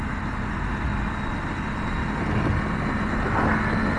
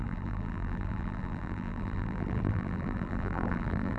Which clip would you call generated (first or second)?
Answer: second